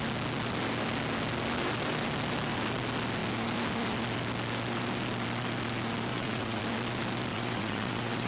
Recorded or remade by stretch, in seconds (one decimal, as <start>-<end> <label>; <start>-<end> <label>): 0.0-6.1 recorded; 6.1-6.6 remade; 6.6-7.3 recorded; 7.3-8.3 remade

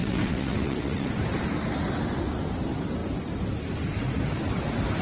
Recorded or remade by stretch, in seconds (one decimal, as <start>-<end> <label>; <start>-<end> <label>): 0.0-1.1 remade; 1.1-5.0 recorded